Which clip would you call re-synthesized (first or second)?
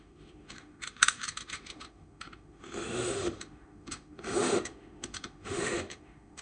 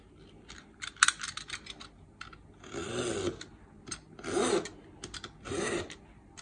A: first